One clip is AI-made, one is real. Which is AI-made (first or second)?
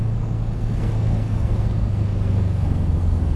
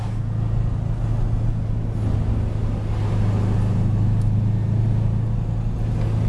first